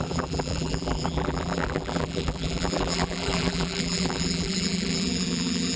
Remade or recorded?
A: remade